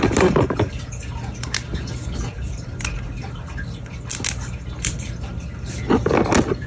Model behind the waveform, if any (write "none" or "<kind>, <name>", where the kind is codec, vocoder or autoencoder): none